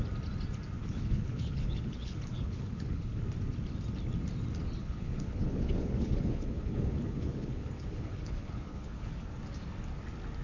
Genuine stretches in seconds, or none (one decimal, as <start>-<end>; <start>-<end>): 0.0-0.8; 3.2-4.8; 9.1-10.4